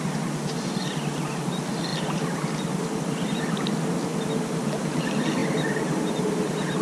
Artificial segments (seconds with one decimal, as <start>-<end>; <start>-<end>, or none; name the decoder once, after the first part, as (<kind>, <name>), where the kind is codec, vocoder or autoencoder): 5.4-6.1 (vocoder, BigVGAN v2)